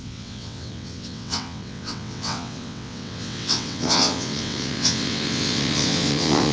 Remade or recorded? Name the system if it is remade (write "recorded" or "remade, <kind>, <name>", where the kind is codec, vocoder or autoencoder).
remade, vocoder, WaveNeXt